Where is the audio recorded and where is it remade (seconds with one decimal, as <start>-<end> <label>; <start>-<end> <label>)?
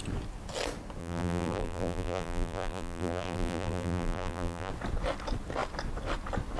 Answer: 0.0-1.0 recorded; 1.0-4.7 remade; 4.7-6.6 recorded